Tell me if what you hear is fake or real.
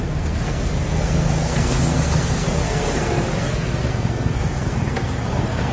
fake